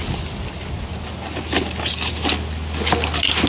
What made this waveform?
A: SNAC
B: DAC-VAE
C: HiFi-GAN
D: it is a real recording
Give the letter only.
D